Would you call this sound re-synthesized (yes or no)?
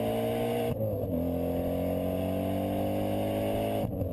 no